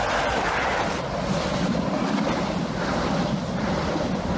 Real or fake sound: real